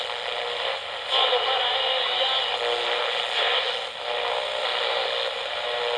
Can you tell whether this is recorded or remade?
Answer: recorded